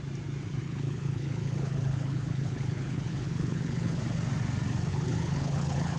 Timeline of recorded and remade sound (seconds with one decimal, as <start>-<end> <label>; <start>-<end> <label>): 0.0-0.6 recorded; 0.6-4.0 remade; 4.0-4.9 recorded; 4.9-6.0 remade